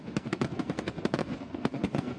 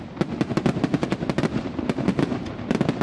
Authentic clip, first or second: second